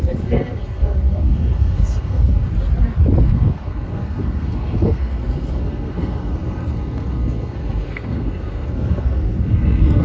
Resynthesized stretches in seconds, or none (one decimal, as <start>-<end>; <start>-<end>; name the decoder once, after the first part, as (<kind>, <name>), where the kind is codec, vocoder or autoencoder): 0.0-2.5 (codec, SNAC); 3.2-10.0

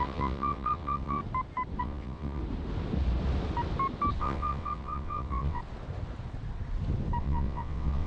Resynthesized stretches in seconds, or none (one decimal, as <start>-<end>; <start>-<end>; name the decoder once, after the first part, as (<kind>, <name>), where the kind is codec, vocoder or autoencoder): 0.0-1.2 (vocoder, WaveNeXt); 1.8-2.4; 4.2-5.6; 7.2-8.1

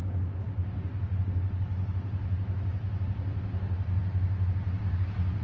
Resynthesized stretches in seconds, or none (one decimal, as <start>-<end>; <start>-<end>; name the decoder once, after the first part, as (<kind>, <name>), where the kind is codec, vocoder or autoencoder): none

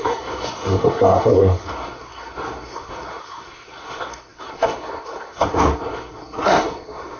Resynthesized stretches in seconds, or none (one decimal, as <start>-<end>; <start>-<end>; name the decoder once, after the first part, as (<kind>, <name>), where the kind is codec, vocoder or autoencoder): 0.0-7.2 (codec, SNAC)